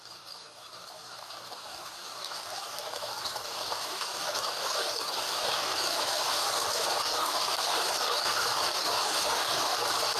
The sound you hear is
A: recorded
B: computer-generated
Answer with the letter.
B